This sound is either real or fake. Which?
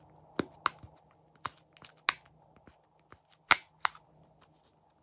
real